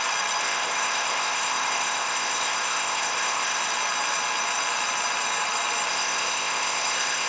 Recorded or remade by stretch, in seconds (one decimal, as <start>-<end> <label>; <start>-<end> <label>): 0.0-0.4 recorded; 0.4-3.6 remade; 3.6-5.9 recorded; 5.9-7.3 remade